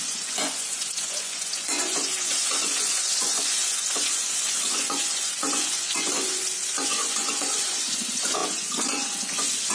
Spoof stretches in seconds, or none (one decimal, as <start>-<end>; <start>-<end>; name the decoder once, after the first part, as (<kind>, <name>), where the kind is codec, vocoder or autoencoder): 0.0-9.7 (vocoder, Vocos)